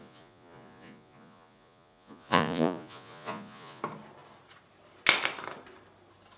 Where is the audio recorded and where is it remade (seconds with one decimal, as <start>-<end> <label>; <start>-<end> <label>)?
0.0-3.8 remade; 3.8-6.4 recorded